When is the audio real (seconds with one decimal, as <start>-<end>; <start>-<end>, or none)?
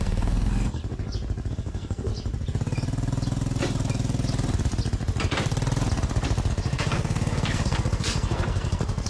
0.8-1.5; 2.1-6.5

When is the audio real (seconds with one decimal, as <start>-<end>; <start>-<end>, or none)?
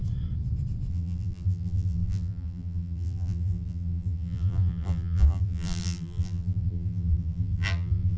0.0-0.9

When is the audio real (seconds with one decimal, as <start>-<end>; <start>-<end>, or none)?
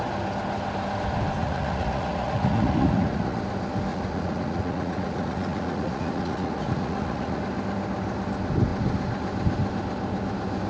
0.0-1.4; 3.4-3.9; 7.4-10.7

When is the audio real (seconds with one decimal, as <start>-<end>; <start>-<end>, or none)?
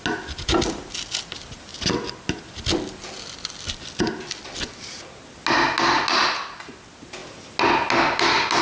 0.0-8.6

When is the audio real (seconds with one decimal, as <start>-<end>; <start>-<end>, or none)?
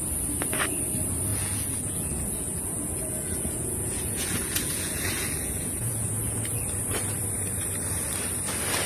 0.0-1.3; 5.0-5.4; 6.4-8.9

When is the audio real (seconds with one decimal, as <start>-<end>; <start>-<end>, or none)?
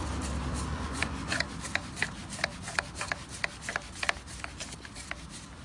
0.0-0.7; 1.4-5.6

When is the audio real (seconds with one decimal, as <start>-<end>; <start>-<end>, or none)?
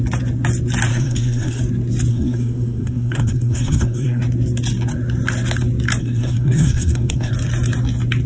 0.0-0.9; 1.6-2.1; 4.2-6.0; 7.3-8.3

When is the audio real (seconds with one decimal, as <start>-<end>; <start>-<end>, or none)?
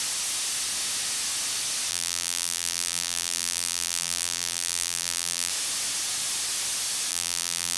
0.0-1.9; 5.5-7.1